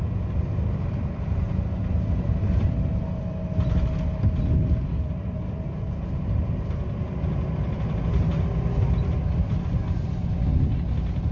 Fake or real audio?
real